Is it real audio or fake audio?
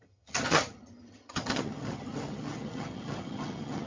fake